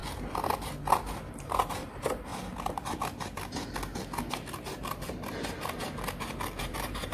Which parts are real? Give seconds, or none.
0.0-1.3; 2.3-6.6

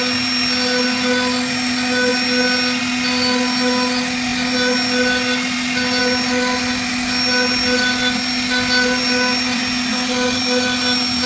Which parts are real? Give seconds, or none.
0.0-11.3

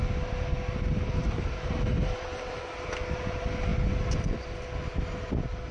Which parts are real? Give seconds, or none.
0.0-1.2; 2.6-5.7

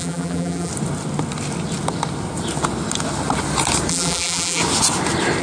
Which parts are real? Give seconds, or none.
0.7-3.9; 4.6-5.4